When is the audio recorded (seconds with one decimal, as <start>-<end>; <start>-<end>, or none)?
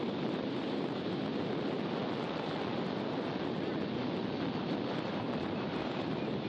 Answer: 1.3-4.9